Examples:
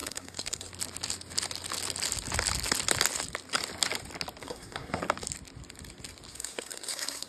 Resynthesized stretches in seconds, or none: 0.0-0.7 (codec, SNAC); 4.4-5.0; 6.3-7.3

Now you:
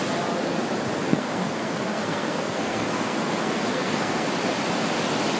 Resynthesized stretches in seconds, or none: 1.1-4.3 (codec, SNAC)

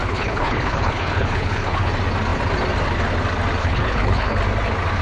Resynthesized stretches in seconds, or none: 0.0-1.9 (codec, HILCodec); 3.6-4.4

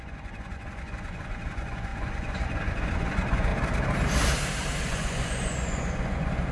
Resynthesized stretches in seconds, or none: 0.0-3.5 (vocoder, Vocos); 4.8-6.5

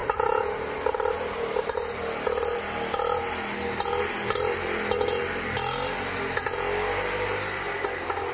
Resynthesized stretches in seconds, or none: none